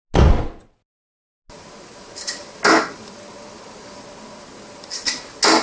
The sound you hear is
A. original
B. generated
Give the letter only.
A